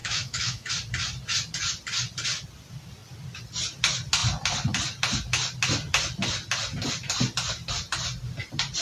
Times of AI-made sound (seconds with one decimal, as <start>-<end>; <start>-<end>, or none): 0.0-0.7